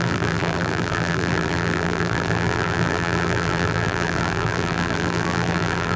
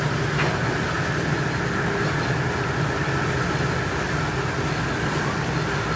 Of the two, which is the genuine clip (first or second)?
second